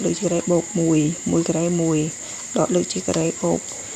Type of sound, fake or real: fake